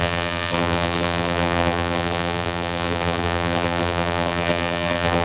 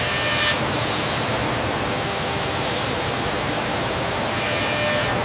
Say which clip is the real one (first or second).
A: second